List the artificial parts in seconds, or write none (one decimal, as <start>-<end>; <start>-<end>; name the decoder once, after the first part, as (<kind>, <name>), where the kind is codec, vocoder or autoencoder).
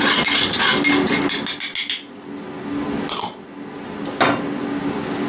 none